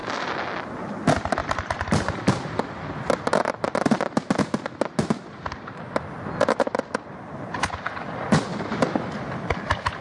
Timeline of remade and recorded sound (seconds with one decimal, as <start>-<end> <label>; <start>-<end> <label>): 0.0-1.4 recorded; 1.4-2.2 remade; 2.2-10.0 recorded